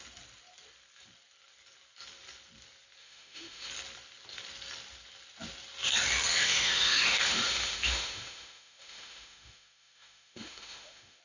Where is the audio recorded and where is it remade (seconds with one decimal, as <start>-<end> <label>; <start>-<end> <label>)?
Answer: 0.0-3.0 recorded; 3.0-3.7 remade; 3.7-6.3 recorded; 6.3-11.2 remade